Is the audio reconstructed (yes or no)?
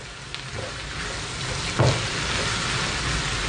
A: no